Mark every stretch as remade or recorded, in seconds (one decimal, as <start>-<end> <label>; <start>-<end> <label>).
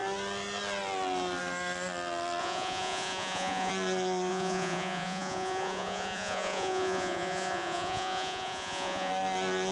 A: 0.0-2.4 recorded; 2.4-3.7 remade; 3.7-4.3 recorded; 4.3-9.1 remade; 9.1-9.7 recorded